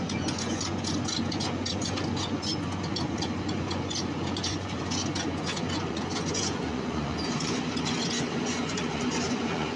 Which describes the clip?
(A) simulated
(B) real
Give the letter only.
A